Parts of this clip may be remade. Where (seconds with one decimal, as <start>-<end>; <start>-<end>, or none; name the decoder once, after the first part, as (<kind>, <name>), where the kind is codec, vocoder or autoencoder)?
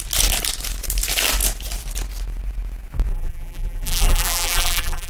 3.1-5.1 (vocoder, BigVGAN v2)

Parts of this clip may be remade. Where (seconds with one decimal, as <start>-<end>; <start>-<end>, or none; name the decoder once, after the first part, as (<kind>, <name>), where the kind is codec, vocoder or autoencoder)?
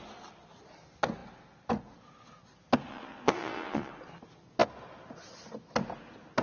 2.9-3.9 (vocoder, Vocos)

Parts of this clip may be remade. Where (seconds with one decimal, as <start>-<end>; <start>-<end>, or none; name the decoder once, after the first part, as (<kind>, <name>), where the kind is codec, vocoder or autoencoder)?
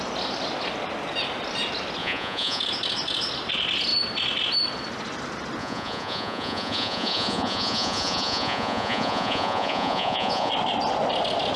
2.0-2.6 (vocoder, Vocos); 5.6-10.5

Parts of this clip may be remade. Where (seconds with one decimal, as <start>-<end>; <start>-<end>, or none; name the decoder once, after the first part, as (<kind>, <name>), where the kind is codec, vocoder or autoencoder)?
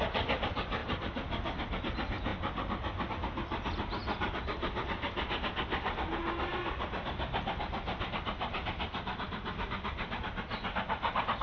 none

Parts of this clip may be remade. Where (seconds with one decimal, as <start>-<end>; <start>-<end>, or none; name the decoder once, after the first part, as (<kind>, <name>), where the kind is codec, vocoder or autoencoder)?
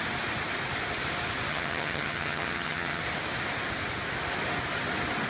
1.5-3.0 (vocoder, HiFi-GAN)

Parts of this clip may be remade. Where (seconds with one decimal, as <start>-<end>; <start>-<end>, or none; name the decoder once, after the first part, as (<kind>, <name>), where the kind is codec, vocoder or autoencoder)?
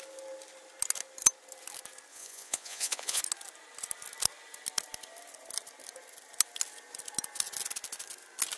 2.1-3.2 (vocoder, Vocos)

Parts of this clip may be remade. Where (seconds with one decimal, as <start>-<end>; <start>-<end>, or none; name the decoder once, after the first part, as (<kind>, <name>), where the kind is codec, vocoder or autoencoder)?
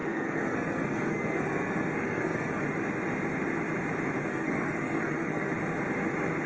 0.0-2.6 (codec, SNAC); 4.3-5.5